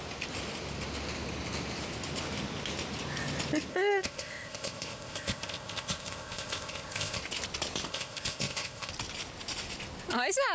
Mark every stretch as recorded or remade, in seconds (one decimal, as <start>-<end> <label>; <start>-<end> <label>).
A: 0.0-3.7 recorded; 3.7-7.2 remade; 7.2-7.9 recorded; 7.9-8.9 remade; 8.9-10.5 recorded